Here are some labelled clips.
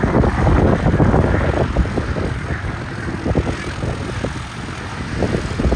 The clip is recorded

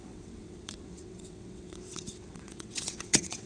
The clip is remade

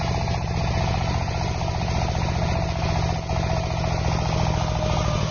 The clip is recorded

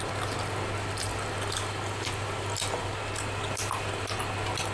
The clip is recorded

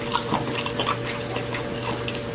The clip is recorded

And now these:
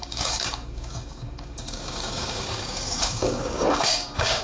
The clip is remade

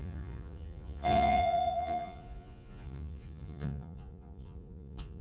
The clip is remade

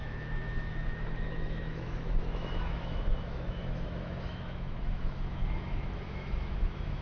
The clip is remade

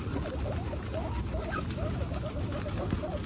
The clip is recorded